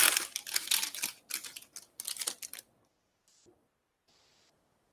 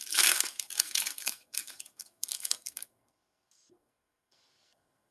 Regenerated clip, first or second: second